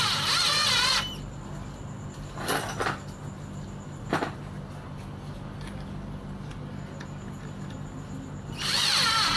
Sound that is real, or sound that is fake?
real